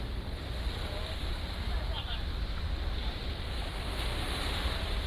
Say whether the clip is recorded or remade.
recorded